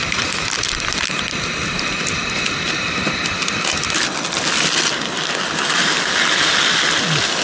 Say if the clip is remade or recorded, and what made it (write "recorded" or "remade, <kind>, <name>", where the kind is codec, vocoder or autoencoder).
recorded